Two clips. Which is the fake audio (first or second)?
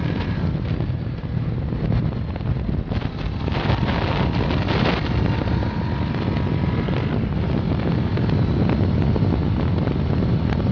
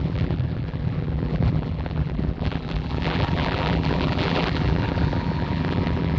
second